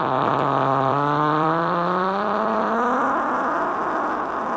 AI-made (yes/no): yes